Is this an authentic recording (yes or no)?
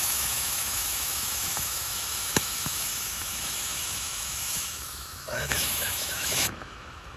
no